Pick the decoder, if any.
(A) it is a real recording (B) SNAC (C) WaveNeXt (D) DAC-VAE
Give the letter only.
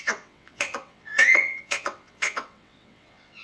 C